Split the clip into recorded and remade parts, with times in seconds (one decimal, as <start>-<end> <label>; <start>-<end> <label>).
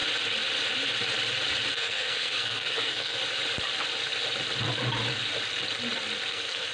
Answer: 0.0-1.7 recorded; 1.7-3.2 remade; 3.2-6.3 recorded; 6.3-6.7 remade